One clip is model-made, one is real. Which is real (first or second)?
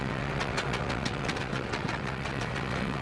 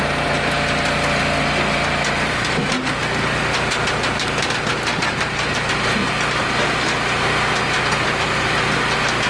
second